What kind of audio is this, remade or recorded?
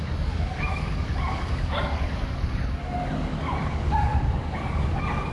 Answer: remade